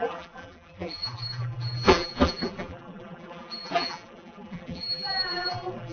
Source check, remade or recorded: remade